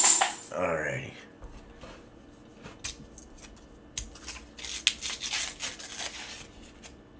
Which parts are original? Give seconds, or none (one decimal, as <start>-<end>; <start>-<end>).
0.0-7.2